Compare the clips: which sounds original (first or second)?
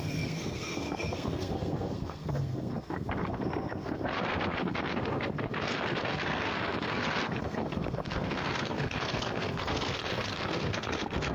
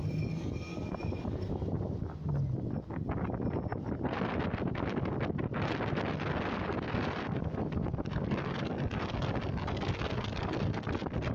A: second